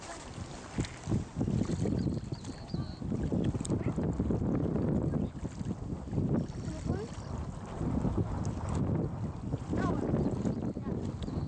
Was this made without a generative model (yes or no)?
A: yes